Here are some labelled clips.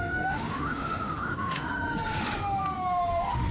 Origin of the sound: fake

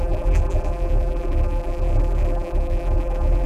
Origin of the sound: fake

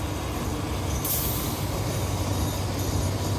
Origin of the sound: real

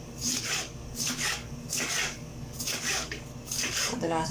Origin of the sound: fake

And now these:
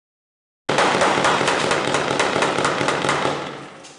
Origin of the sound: real